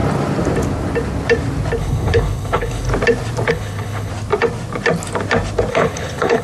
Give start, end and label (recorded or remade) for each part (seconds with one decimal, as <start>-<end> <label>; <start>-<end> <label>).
0.0-1.8 recorded; 1.8-2.9 remade; 2.9-3.5 recorded; 3.5-4.1 remade; 4.1-5.7 recorded; 5.7-6.4 remade